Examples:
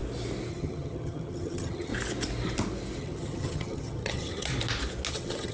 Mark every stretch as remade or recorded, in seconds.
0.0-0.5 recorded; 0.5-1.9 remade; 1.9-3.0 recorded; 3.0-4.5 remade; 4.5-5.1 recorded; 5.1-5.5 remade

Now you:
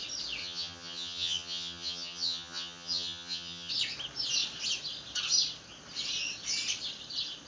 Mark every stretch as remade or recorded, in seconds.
0.0-0.4 recorded; 0.4-3.7 remade; 3.7-7.5 recorded